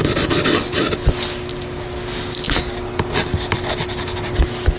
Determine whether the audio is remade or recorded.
recorded